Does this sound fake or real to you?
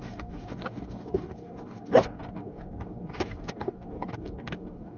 fake